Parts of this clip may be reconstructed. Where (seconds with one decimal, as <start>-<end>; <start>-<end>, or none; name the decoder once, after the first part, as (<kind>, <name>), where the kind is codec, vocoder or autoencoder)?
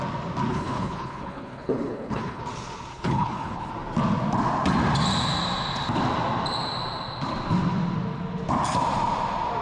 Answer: 0.5-2.4 (codec, HILCodec); 2.9-3.7